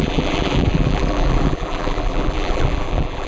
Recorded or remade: remade